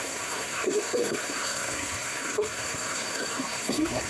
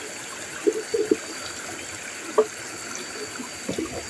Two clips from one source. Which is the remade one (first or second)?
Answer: first